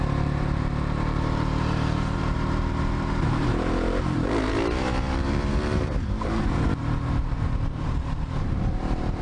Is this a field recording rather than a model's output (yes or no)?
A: no